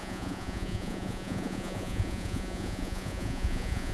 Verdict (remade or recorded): remade